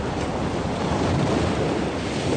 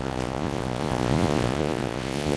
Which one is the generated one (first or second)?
second